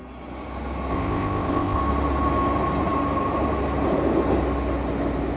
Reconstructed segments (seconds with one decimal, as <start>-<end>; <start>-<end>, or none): 0.9-1.8